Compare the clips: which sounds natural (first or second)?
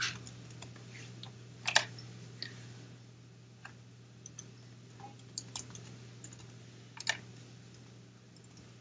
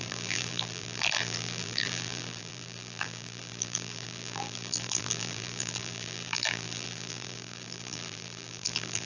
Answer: first